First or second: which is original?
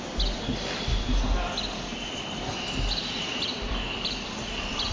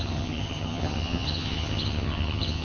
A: first